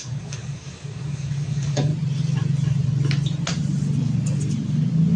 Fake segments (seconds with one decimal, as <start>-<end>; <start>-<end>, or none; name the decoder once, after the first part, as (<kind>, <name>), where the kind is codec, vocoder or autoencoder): 0.0-1.9 (codec, DAC)

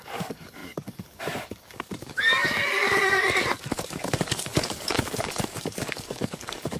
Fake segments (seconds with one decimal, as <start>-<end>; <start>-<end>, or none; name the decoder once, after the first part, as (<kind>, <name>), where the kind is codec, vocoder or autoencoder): 0.0-6.8 (codec, DAC)

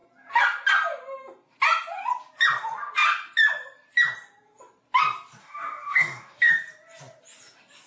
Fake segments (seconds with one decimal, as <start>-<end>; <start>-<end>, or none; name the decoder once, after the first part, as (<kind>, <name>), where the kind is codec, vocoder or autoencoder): 5.4-6.5 (codec, DAC)

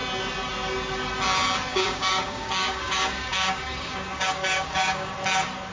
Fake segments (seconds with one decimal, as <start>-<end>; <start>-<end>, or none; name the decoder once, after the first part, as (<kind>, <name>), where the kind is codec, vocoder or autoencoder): 1.7-5.1 (codec, DAC)

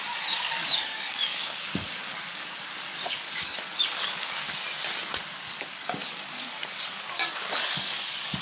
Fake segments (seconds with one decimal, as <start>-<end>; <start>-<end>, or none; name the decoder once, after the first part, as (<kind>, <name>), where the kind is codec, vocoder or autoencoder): 0.0-4.6 (codec, DAC); 5.1-8.4

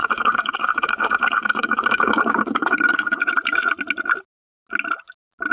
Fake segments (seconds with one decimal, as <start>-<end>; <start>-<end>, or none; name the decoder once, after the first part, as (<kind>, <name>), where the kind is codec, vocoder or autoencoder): 0.0-3.3 (codec, DAC)

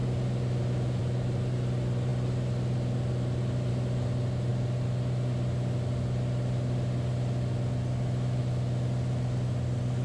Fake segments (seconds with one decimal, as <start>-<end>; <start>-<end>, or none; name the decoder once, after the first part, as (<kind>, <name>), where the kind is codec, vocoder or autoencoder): none

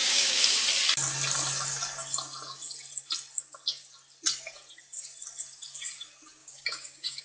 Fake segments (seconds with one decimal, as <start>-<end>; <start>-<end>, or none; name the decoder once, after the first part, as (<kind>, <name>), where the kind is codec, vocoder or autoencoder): 0.0-0.6 (codec, DAC); 6.4-7.2